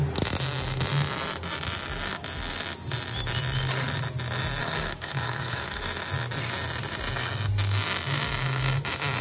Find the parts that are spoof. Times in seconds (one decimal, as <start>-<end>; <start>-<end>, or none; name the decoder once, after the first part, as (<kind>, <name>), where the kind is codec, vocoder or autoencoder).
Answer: 4.6-5.8 (codec, DAC)